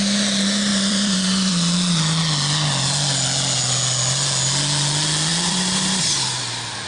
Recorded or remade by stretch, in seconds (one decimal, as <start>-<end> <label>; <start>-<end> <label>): 0.0-0.7 recorded; 0.7-1.5 remade; 1.5-5.3 recorded; 5.3-6.9 remade